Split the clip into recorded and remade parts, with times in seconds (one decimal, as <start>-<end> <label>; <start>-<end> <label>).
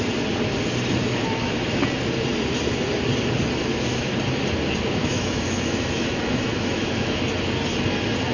0.0-1.0 recorded; 1.0-1.7 remade; 1.7-3.6 recorded; 3.6-4.1 remade; 4.1-5.0 recorded; 5.0-7.3 remade; 7.3-8.3 recorded